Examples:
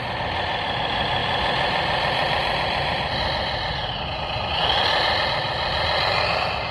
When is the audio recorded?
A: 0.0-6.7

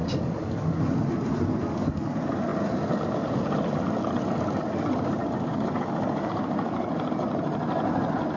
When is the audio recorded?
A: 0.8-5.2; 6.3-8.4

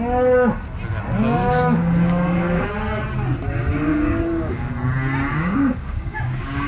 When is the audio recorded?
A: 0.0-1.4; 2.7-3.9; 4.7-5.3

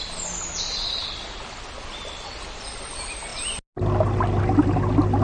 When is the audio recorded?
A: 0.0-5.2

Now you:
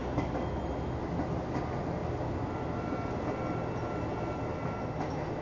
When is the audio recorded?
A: 0.6-5.4